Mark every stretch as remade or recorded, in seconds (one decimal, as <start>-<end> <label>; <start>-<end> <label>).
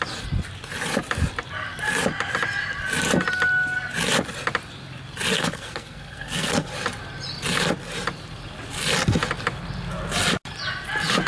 0.0-5.4 recorded; 5.4-6.7 remade; 6.7-11.3 recorded